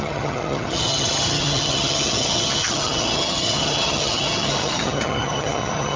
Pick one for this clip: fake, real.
fake